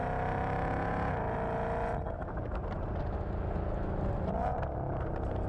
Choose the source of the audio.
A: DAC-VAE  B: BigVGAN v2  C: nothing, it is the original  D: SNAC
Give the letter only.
C